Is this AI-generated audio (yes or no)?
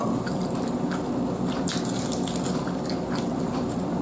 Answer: no